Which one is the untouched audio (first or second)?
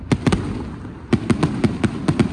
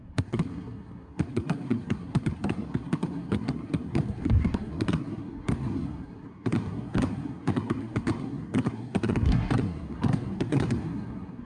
first